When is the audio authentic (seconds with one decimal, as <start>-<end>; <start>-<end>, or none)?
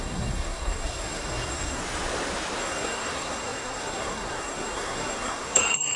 1.8-2.6